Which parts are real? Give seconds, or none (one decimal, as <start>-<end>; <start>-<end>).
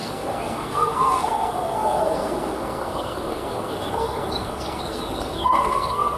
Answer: none